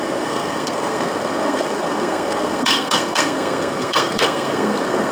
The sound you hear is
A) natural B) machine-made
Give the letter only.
B